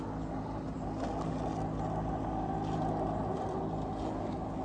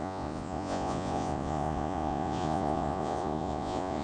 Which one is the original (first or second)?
first